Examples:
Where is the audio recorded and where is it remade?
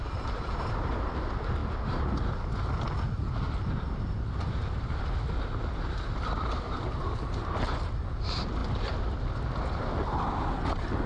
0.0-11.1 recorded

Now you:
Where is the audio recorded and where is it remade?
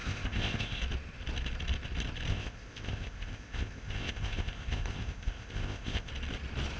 0.0-0.8 remade; 0.8-2.3 recorded; 2.3-6.1 remade; 6.1-6.8 recorded